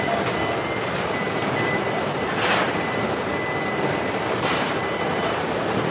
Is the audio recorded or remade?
recorded